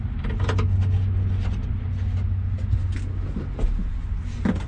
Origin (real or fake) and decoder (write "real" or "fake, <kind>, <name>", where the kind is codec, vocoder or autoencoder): real